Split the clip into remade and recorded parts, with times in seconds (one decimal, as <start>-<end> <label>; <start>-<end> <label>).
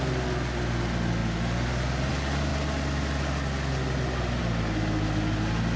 0.0-5.8 recorded